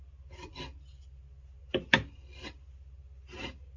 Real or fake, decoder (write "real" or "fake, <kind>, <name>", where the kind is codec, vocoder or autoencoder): real